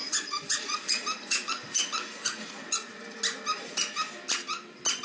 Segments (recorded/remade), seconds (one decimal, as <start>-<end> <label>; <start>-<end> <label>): 0.0-3.0 remade; 3.0-5.0 recorded